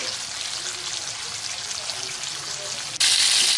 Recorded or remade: recorded